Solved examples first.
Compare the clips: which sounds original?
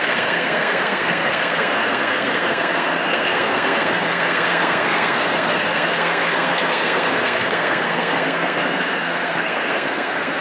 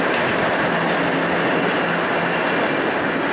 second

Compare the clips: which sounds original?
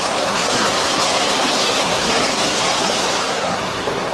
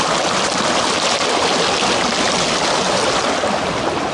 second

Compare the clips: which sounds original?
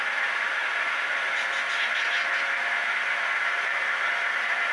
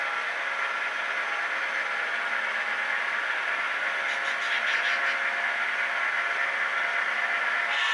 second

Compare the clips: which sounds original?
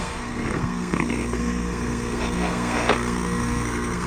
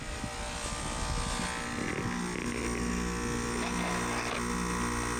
second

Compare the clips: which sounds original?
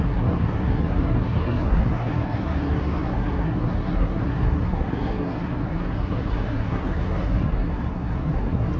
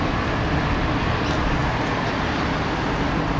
second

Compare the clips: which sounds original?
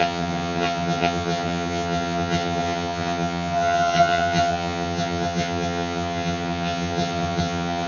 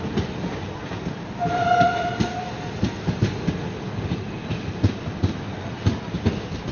second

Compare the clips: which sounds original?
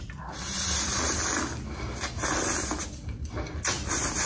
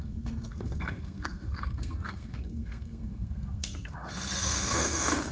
first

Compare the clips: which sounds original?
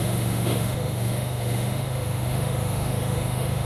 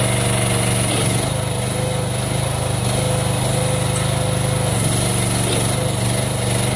second